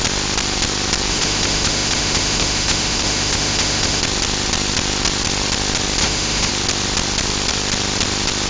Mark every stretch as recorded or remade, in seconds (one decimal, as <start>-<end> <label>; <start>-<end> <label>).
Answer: 0.0-1.1 recorded; 1.1-4.0 remade; 4.0-6.0 recorded; 6.0-6.5 remade; 6.5-8.5 recorded